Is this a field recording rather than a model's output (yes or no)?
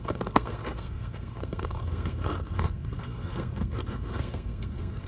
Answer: no